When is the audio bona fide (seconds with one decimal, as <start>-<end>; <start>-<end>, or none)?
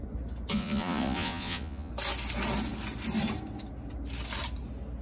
0.0-0.5; 1.9-5.0